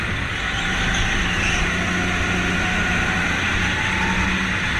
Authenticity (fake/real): real